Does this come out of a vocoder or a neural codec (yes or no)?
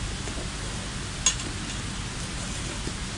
no